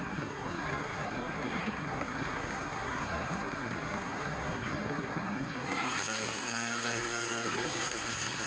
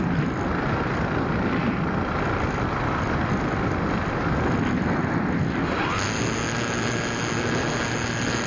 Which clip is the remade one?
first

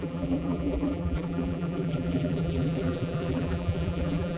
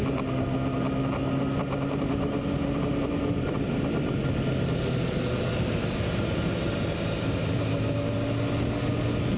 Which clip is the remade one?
first